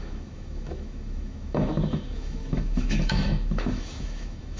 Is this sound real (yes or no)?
no